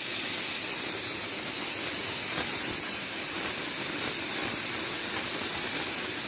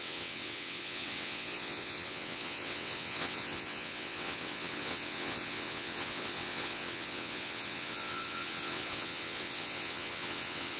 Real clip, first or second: first